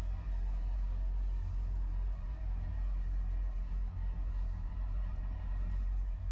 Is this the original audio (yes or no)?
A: yes